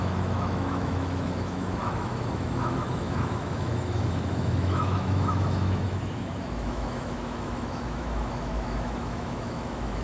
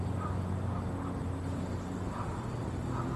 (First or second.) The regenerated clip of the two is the first